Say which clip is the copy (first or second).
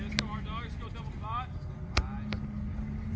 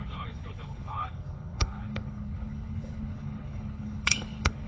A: second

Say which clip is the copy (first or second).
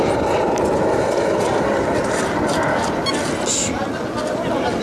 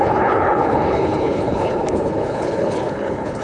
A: second